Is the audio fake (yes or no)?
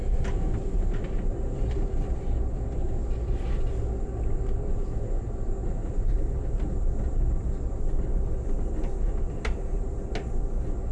no